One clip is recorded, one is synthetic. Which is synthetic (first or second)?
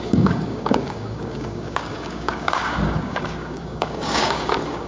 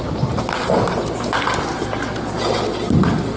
first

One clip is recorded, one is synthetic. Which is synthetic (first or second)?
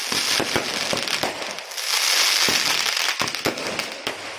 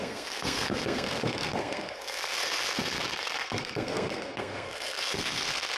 second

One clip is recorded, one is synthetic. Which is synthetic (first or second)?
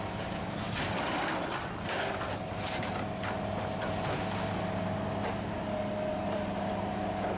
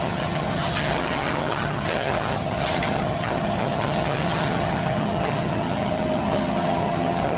second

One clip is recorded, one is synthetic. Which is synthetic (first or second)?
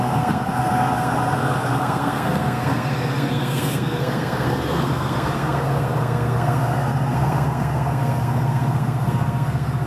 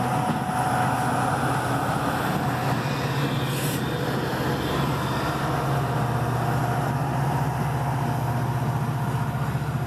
first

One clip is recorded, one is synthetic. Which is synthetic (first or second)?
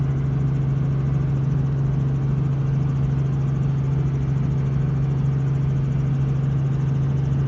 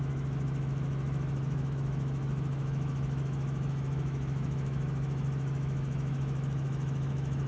second